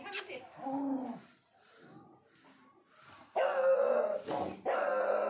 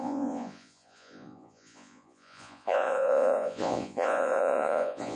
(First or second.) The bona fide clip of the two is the first